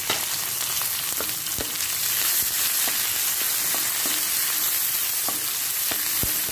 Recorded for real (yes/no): yes